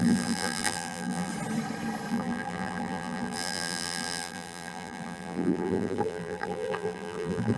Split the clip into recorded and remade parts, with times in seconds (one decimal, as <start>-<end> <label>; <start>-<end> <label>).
0.0-1.3 remade; 1.3-2.1 recorded; 2.1-7.6 remade